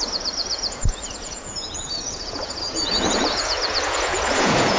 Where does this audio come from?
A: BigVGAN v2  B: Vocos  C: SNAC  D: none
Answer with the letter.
B